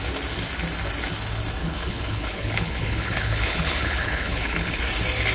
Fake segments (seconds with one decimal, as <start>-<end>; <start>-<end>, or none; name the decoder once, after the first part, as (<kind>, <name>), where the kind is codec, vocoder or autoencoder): 1.6-4.8 (codec, HILCodec)